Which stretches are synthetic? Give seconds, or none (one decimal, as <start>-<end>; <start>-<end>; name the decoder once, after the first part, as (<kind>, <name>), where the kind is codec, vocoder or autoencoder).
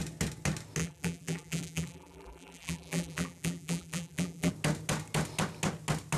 0.8-4.5 (vocoder, BigVGAN v2)